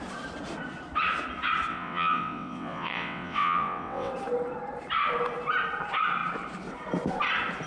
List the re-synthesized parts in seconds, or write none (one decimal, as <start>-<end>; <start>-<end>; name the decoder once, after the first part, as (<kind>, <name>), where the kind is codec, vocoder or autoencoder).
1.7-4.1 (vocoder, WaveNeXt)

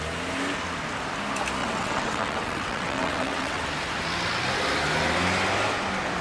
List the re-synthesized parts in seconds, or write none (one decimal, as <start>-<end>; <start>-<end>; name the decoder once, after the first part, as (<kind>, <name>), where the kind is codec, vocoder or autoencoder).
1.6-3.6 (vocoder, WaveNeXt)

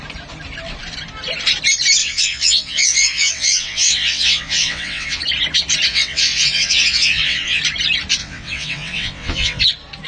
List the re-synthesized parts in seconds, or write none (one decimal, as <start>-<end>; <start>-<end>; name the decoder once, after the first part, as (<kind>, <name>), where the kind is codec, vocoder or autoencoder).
2.0-5.2 (vocoder, WaveNeXt); 5.9-7.6; 8.2-9.6

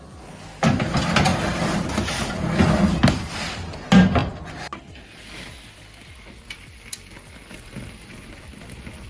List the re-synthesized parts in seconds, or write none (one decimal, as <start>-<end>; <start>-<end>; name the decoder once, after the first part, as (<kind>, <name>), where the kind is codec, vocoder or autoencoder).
none